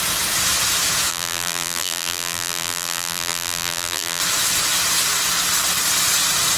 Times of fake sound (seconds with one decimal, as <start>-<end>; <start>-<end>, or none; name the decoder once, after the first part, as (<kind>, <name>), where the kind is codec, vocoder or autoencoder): 1.1-4.2 (vocoder, BigVGAN v2)